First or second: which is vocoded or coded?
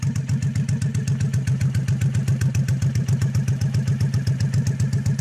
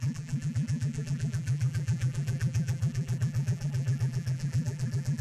second